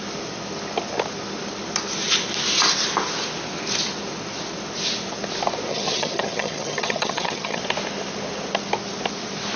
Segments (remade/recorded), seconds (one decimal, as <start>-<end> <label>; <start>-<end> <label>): 0.0-5.7 recorded; 5.7-7.6 remade; 7.6-9.6 recorded